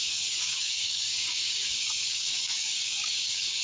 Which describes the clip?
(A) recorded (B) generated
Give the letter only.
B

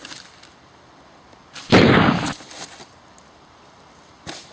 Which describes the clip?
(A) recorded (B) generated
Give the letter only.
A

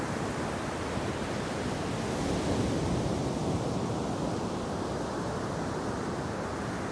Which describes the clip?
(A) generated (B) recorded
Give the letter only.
B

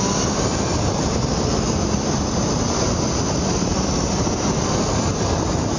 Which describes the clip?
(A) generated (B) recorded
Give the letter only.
A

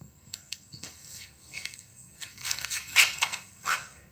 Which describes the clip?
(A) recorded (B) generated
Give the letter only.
B